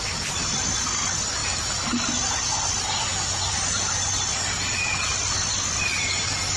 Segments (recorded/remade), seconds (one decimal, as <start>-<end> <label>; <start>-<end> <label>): 0.0-6.6 recorded